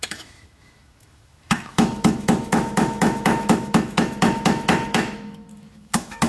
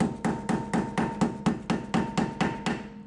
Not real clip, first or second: first